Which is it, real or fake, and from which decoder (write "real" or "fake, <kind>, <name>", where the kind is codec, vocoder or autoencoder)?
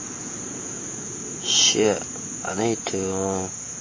fake, vocoder, Vocos